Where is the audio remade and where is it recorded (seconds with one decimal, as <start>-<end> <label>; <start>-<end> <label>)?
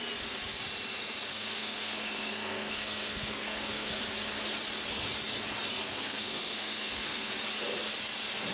0.0-1.3 recorded; 1.3-4.0 remade; 4.0-5.8 recorded; 5.8-7.3 remade; 7.3-8.5 recorded